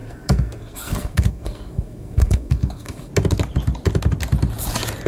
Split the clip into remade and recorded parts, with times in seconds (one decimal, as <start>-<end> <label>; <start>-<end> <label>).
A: 0.0-3.1 remade; 3.1-5.1 recorded